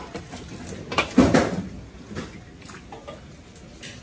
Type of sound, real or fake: real